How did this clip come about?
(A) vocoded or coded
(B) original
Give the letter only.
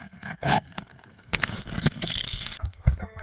A